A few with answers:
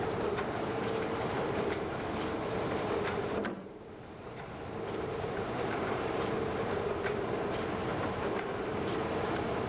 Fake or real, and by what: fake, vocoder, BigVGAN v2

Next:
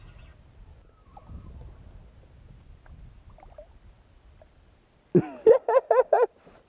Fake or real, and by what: real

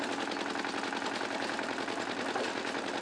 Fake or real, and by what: real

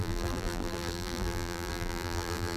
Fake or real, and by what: fake, vocoder, BigVGAN v2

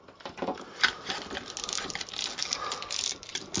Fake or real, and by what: real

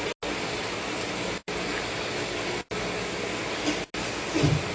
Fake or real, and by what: real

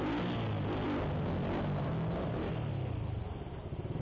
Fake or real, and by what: real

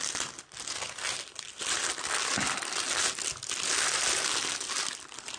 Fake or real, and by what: real